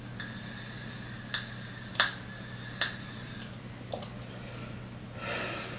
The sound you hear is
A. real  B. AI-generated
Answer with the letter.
A